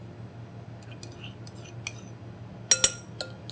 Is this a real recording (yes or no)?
yes